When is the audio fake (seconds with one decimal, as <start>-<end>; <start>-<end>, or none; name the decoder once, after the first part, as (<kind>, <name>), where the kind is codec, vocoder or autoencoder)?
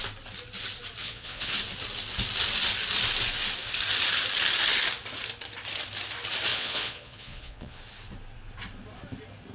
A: 1.0-1.5 (vocoder, Vocos); 6.5-7.8